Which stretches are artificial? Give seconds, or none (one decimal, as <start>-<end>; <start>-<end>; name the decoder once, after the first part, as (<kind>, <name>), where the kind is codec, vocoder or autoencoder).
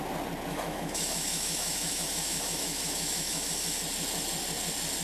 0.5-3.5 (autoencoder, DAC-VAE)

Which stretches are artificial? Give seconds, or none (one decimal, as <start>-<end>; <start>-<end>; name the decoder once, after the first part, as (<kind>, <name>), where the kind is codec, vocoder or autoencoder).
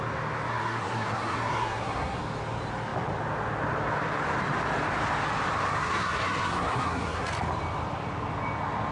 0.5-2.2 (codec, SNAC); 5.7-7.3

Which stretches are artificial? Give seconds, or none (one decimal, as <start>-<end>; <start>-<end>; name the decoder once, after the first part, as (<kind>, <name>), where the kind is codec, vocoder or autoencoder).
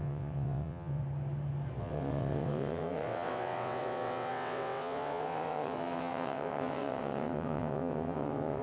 0.0-1.0 (vocoder, WaveNeXt); 1.8-8.6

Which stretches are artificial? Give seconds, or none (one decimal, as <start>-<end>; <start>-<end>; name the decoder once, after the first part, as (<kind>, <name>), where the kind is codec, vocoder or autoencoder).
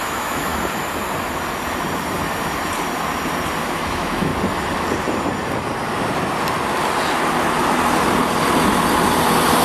0.0-0.5 (autoencoder, DAC-VAE); 3.6-4.3